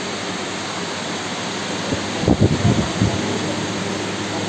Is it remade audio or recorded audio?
recorded